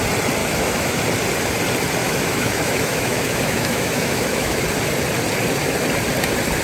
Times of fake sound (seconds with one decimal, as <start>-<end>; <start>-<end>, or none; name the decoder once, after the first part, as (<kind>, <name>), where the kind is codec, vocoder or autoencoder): 0.4-1.0 (autoencoder, DAC-VAE); 2.0-4.6